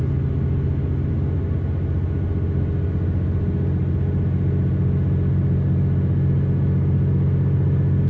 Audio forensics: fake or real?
real